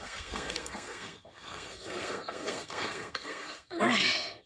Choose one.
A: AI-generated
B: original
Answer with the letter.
A